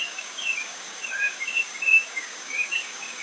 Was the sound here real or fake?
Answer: fake